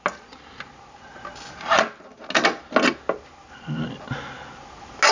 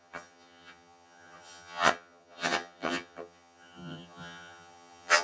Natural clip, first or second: first